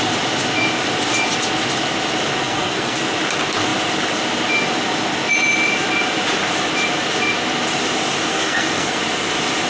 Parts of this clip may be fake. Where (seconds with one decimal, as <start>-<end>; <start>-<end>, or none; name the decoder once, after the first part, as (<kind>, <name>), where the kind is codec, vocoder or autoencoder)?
2.4-3.0 (codec, SNAC); 8.3-9.0